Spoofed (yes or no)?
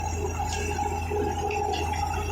no